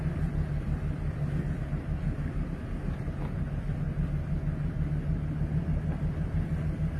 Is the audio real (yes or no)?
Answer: yes